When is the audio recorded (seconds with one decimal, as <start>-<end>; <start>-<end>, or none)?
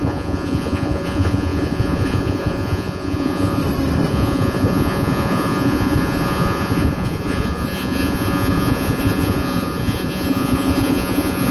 3.6-4.1